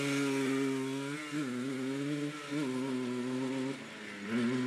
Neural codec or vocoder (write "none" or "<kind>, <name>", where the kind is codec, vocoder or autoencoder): none